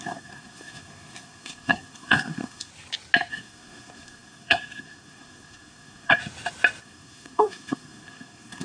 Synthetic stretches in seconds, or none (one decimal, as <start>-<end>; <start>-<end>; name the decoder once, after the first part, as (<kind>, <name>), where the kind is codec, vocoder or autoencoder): 0.0-2.7 (codec, SNAC); 3.3-6.2; 6.8-8.6